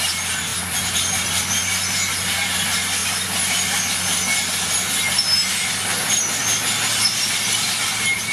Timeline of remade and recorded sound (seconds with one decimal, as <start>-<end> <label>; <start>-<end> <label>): 0.0-3.0 recorded; 3.0-3.8 remade; 3.8-5.9 recorded; 5.9-7.3 remade; 7.3-8.3 recorded